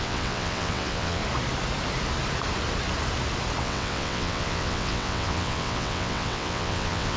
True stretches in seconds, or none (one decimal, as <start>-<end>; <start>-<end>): 1.2-3.6